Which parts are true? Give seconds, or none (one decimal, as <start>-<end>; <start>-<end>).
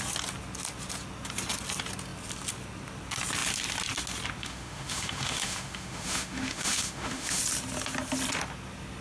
0.0-4.4; 7.4-9.0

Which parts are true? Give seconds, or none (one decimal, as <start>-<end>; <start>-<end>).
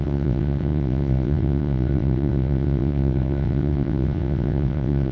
none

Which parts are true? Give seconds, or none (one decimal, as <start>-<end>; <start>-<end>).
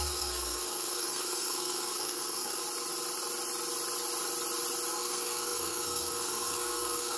2.6-4.9